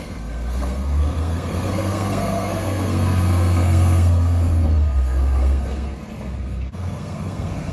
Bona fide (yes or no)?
no